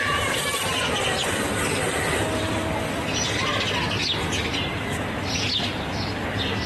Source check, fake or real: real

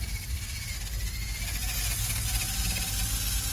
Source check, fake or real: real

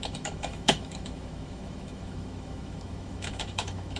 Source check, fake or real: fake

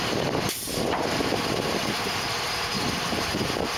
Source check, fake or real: fake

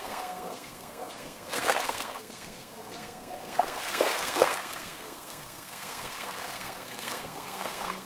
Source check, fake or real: fake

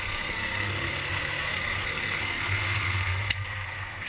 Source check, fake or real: fake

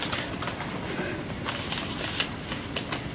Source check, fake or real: real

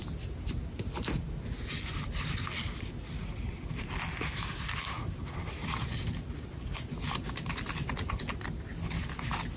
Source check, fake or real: real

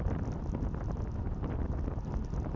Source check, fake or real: real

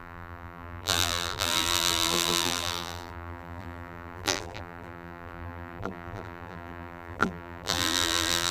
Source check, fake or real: fake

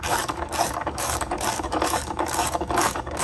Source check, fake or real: fake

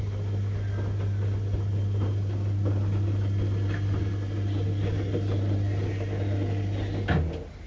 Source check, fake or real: real